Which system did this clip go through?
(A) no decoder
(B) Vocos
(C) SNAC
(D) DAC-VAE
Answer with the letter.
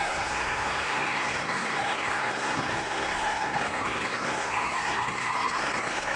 C